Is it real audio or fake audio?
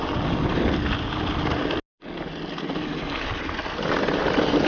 real